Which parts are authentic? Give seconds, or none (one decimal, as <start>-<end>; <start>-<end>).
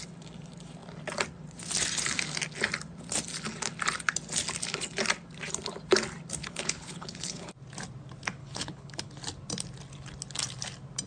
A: 0.0-6.4; 7.5-8.4; 9.1-11.1